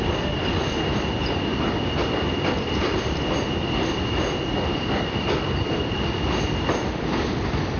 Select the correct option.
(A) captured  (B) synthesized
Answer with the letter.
B